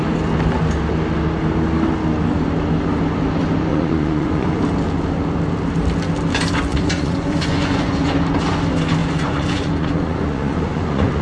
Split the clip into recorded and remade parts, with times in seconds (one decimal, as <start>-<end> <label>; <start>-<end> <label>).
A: 0.0-3.7 recorded; 3.7-4.6 remade; 4.6-6.7 recorded; 6.7-8.1 remade; 8.1-9.0 recorded; 9.0-11.2 remade